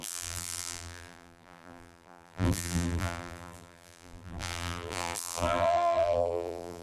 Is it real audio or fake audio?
fake